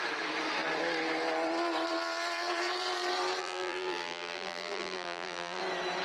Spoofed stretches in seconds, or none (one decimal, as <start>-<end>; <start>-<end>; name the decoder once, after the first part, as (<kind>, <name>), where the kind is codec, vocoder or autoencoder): 3.4-5.6 (vocoder, BigVGAN v2)

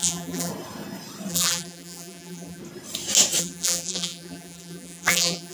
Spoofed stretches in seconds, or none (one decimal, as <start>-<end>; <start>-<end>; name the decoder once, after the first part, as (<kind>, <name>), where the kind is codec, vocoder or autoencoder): 0.0-0.5 (vocoder, BigVGAN v2); 1.3-2.6; 3.4-5.5

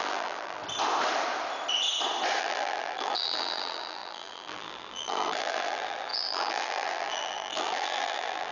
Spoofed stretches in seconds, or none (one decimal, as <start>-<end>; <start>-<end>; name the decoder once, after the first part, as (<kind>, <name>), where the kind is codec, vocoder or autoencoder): 0.0-0.6 (vocoder, BigVGAN v2); 2.4-8.5

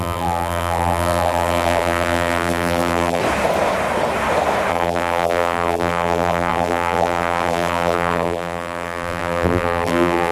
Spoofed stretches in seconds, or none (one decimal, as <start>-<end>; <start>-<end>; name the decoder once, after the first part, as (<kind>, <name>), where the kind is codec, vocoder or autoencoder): 0.0-3.2 (vocoder, BigVGAN v2); 4.7-10.3

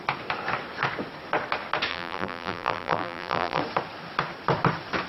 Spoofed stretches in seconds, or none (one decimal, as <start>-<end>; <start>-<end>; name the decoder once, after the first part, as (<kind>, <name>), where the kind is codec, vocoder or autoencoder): 1.9-3.6 (vocoder, BigVGAN v2)